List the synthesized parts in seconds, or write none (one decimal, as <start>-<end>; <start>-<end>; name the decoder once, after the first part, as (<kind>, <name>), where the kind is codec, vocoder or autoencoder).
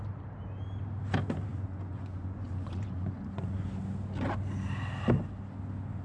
1.5-3.7 (vocoder, Vocos)